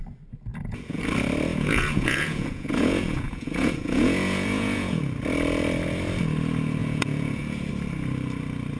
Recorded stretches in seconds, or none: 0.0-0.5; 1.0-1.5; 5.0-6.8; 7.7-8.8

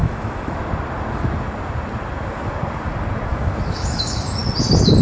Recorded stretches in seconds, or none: 0.6-3.3; 4.4-5.0

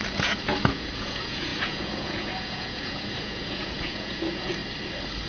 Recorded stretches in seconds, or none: 4.6-5.3